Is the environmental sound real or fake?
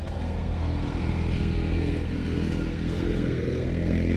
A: fake